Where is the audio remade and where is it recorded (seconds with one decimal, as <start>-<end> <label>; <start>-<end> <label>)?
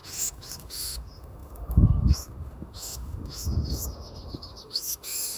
0.0-5.4 remade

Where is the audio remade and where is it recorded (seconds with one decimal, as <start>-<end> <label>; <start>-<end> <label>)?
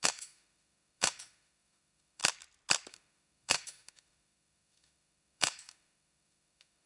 0.0-2.2 remade; 2.2-2.9 recorded; 2.9-6.9 remade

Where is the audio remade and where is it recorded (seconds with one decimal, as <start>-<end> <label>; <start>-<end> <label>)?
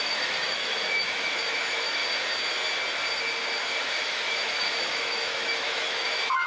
0.0-2.0 remade; 2.0-3.8 recorded; 3.8-6.5 remade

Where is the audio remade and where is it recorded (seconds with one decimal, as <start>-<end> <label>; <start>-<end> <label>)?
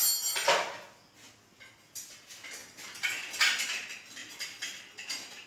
0.0-5.5 recorded